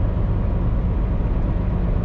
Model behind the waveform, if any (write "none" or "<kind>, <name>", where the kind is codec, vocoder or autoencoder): none